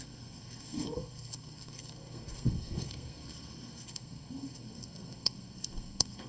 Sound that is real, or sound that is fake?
fake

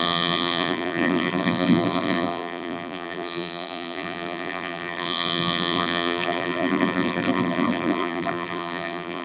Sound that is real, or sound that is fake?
fake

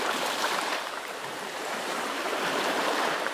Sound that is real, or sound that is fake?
fake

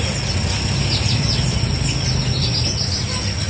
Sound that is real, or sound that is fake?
real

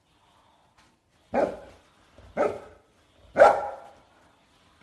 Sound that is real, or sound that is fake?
real